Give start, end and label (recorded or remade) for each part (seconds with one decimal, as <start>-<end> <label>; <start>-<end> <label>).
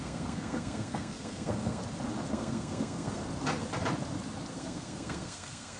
0.0-1.8 remade; 1.8-2.3 recorded; 2.3-3.2 remade; 3.2-4.5 recorded; 4.5-5.8 remade